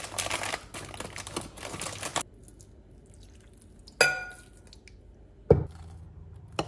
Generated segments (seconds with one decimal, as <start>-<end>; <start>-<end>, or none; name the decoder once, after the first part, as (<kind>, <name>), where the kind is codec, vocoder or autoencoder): none